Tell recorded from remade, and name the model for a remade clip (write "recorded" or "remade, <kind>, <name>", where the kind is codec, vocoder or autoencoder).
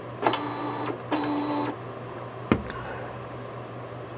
recorded